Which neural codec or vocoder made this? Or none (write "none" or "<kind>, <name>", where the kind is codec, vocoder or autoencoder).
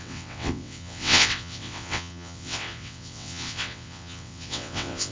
vocoder, WaveNeXt